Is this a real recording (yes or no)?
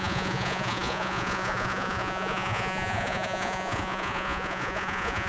no